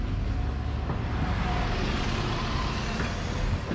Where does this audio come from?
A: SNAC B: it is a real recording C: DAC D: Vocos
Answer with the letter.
B